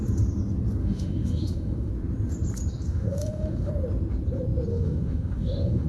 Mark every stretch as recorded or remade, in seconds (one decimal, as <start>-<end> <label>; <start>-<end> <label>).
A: 0.0-0.8 recorded; 0.8-1.9 remade; 1.9-2.9 recorded; 2.9-3.7 remade; 3.7-4.7 recorded; 4.7-5.9 remade